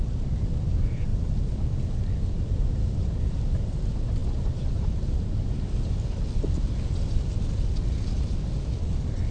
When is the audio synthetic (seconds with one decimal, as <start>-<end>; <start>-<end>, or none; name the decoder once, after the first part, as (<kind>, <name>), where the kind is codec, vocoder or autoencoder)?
none